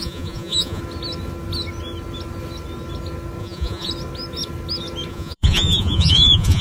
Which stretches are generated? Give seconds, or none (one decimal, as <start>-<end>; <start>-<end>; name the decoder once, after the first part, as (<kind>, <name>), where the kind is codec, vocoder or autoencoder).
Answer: 0.0-0.8 (vocoder, Vocos); 3.4-3.9; 5.1-6.6